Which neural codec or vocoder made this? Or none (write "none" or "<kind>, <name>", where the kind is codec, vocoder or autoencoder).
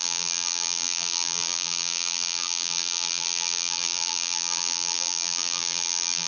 vocoder, BigVGAN v2